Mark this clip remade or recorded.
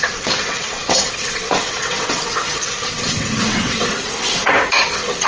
remade